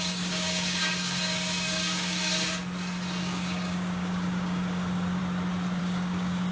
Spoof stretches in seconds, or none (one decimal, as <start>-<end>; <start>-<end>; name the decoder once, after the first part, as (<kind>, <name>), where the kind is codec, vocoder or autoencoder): 0.0-2.3 (codec, DAC); 3.2-5.2; 5.8-6.5